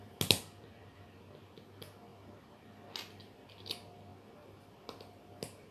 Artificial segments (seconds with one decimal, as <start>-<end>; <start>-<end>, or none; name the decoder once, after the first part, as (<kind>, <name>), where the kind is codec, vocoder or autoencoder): none